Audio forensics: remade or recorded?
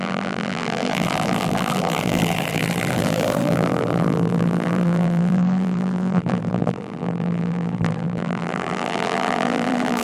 remade